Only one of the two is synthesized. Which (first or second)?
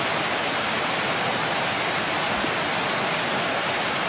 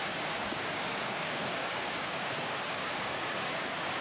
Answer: second